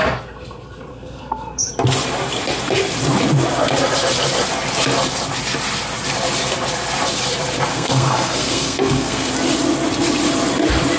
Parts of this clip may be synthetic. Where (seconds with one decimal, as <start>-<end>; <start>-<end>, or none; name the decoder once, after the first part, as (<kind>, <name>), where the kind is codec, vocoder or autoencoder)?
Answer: 0.9-1.7 (codec, SNAC); 7.7-9.3

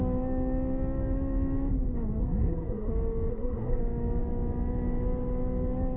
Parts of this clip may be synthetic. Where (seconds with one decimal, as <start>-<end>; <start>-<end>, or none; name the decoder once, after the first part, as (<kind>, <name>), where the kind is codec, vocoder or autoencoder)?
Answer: 2.2-2.9 (codec, SNAC); 3.3-3.8

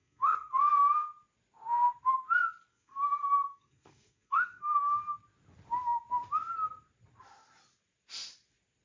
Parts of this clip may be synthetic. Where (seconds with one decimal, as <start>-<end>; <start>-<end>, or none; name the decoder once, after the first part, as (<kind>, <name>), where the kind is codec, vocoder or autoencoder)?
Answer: 0.0-0.6 (codec, SNAC); 2.7-4.8

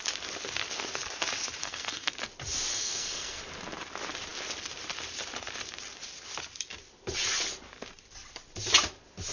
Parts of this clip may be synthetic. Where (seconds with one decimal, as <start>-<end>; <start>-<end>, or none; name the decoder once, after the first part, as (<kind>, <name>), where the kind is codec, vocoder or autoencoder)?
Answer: 1.6-2.1 (codec, SNAC); 2.7-3.4

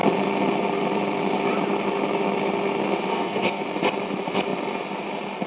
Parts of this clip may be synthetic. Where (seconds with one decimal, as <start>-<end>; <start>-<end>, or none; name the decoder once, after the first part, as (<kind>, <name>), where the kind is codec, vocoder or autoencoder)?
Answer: 3.1-3.6 (codec, SNAC)